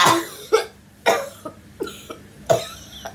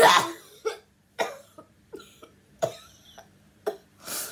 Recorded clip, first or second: first